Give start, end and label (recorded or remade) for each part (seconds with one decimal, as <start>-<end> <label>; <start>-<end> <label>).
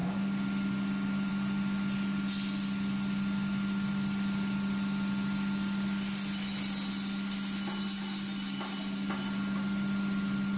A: 0.0-10.6 recorded